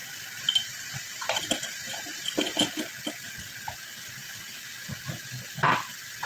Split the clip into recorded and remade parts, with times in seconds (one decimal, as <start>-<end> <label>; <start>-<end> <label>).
0.0-6.3 recorded